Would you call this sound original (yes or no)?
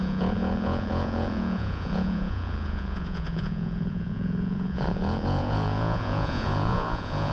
no